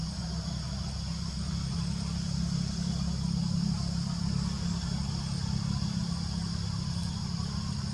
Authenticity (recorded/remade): recorded